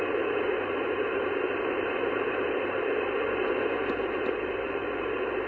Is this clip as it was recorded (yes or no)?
no